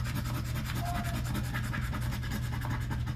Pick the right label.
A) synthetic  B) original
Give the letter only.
B